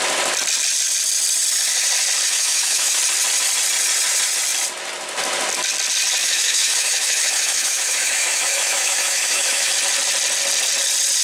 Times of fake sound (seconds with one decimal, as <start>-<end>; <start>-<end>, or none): 2.3-3.0; 6.2-9.7